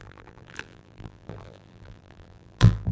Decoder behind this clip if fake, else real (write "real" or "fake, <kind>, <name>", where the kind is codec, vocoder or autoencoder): fake, vocoder, BigVGAN v2